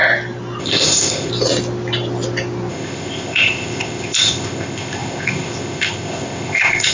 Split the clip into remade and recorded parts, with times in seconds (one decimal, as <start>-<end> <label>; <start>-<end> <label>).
0.0-0.6 recorded; 0.6-1.3 remade; 1.3-2.7 recorded; 2.7-6.9 remade